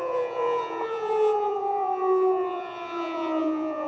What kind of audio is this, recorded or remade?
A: remade